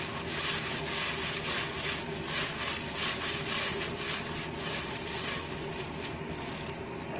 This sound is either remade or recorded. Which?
recorded